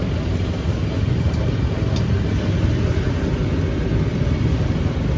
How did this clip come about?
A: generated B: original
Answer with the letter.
B